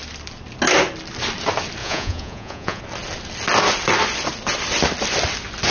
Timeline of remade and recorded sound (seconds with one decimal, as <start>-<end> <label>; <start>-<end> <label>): 0.0-1.8 recorded; 1.8-2.8 remade; 2.8-5.7 recorded